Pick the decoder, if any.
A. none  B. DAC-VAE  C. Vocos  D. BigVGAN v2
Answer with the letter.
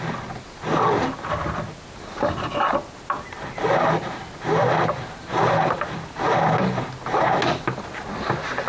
A